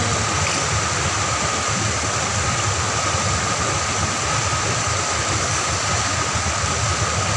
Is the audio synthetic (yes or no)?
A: no